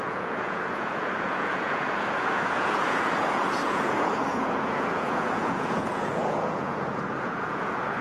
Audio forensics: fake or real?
fake